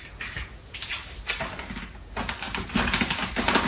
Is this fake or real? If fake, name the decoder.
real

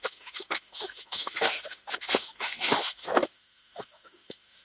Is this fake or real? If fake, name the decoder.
fake, autoencoder, DAC-VAE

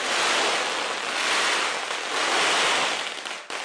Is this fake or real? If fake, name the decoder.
real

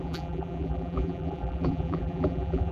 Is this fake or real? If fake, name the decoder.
fake, vocoder, BigVGAN v2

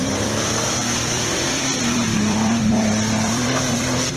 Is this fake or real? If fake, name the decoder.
fake, vocoder, BigVGAN v2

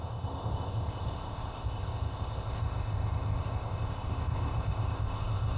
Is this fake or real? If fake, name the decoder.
fake, codec, ZipCodec